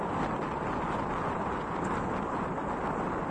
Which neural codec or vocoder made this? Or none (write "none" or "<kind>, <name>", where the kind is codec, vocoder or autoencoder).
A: none